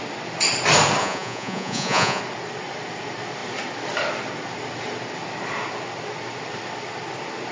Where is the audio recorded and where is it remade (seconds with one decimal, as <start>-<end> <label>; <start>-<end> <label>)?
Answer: 0.0-1.0 recorded; 1.0-2.2 remade; 2.2-7.5 recorded